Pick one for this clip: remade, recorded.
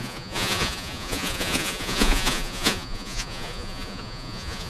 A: remade